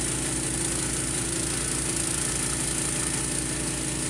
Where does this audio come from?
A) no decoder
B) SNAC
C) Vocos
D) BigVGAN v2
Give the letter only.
A